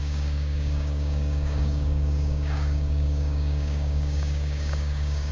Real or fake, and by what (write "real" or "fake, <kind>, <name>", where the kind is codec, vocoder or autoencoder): fake, codec, DAC